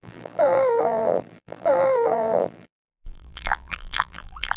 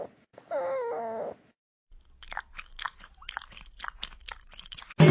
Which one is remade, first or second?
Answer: first